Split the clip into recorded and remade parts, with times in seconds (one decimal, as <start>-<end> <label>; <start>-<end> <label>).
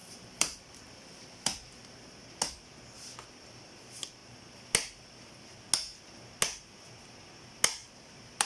0.0-1.9 remade; 1.9-7.8 recorded; 7.8-8.5 remade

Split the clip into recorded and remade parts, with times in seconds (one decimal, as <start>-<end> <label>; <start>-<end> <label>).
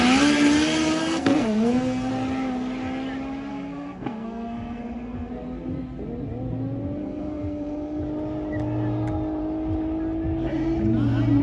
0.0-1.0 recorded; 1.0-2.1 remade; 2.1-3.5 recorded; 3.5-5.3 remade; 5.3-7.0 recorded; 7.0-8.0 remade; 8.0-11.4 recorded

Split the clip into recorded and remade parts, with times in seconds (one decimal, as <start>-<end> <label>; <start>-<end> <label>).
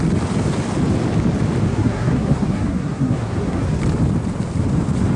0.0-1.7 recorded; 1.7-3.8 remade; 3.8-5.2 recorded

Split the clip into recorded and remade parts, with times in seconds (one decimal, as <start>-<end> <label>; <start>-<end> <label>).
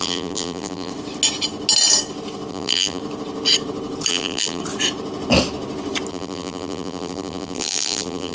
0.0-0.9 remade; 0.9-2.5 recorded; 2.5-3.0 remade; 3.0-4.1 recorded; 4.1-4.6 remade; 4.6-6.1 recorded; 6.1-8.3 remade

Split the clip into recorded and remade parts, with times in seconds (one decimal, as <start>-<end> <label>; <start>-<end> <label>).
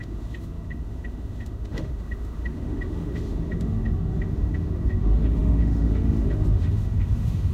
0.0-7.5 remade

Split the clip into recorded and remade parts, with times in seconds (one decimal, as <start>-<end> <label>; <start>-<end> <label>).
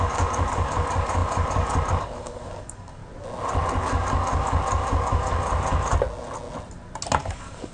0.0-3.0 remade; 3.0-3.8 recorded; 3.8-5.9 remade; 5.9-7.2 recorded; 7.2-7.7 remade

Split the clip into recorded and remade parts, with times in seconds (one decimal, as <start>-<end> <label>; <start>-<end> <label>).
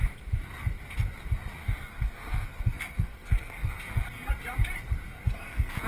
0.0-1.6 recorded; 1.6-4.3 remade; 4.3-5.1 recorded; 5.1-5.9 remade